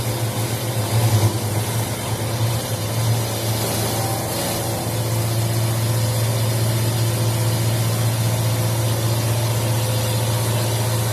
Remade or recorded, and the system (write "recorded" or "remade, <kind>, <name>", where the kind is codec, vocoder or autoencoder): recorded